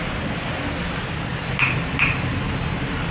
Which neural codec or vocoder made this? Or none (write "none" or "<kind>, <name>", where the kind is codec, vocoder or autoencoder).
none